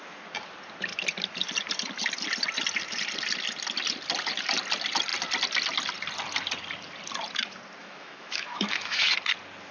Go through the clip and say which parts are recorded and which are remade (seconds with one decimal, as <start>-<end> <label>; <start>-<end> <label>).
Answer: 0.0-7.8 recorded; 7.8-9.1 remade; 9.1-9.7 recorded